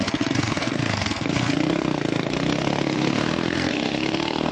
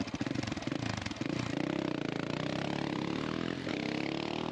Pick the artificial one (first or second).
first